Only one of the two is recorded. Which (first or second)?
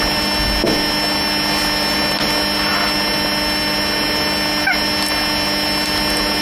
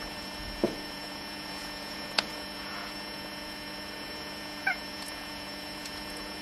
first